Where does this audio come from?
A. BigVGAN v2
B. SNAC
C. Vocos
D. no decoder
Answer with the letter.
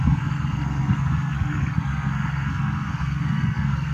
B